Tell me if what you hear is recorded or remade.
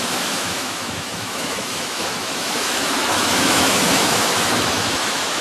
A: remade